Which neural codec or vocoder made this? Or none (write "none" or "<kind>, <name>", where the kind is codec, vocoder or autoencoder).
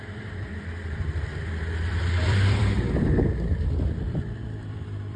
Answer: vocoder, BigVGAN v2